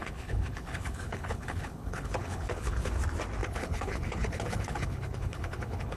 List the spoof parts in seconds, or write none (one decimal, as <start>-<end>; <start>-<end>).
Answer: 0.0-2.9; 3.4-6.0